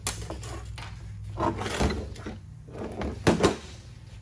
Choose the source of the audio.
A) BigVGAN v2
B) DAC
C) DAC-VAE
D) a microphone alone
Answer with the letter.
D